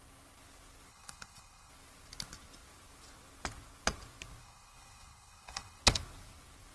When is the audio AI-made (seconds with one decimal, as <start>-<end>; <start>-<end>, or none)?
0.9-1.7; 4.4-5.8